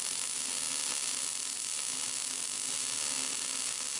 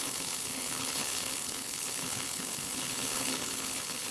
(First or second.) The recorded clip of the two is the first